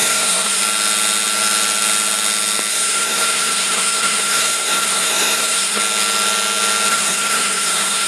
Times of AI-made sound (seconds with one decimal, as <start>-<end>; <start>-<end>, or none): 0.0-0.6; 2.7-5.8; 6.9-8.1